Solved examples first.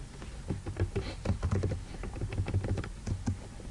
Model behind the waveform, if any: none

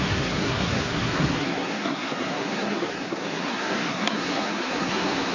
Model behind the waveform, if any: codec, SNAC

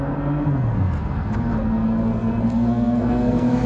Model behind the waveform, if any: codec, SNAC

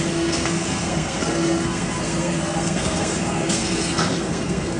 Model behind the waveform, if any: codec, SNAC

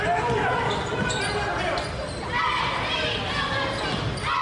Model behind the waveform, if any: none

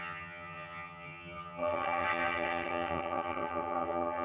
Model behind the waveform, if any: vocoder, HiFi-GAN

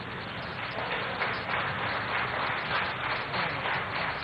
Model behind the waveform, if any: none